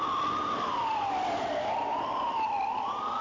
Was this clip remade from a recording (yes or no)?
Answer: no